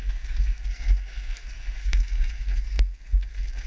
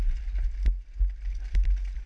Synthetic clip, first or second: first